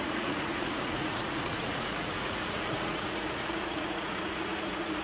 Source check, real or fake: fake